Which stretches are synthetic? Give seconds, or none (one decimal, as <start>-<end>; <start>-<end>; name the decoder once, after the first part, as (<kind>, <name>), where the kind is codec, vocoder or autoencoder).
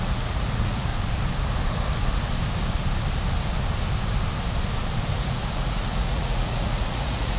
0.0-0.9 (vocoder, Vocos); 5.2-7.4